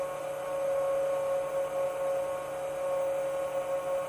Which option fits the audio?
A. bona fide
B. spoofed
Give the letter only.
A